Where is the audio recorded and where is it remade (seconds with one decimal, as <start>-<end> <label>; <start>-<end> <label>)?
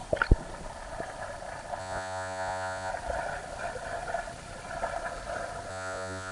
0.0-1.8 recorded; 1.8-2.9 remade; 2.9-5.7 recorded; 5.7-6.3 remade